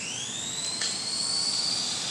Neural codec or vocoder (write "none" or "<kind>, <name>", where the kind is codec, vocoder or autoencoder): none